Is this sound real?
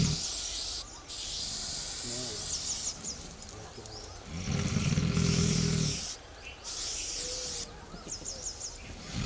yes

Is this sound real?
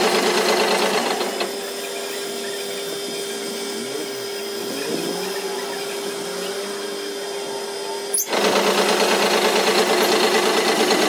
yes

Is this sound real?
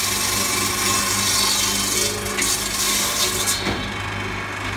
yes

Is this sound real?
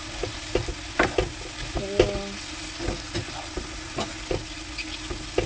yes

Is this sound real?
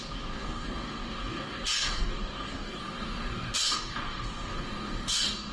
no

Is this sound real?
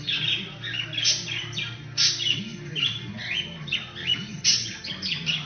yes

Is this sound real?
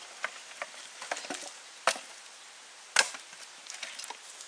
yes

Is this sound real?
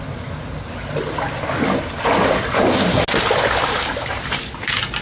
yes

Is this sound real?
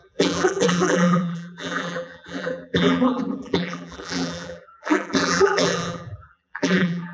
no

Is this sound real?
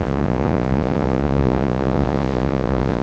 no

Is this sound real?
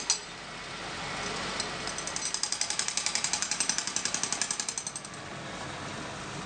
yes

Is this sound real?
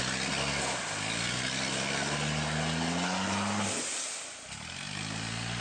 yes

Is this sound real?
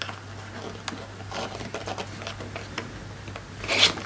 yes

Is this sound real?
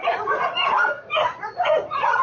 no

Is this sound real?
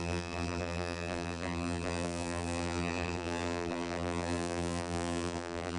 no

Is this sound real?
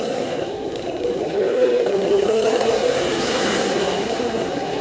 no